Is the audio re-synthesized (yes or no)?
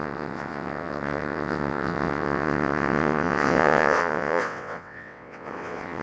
yes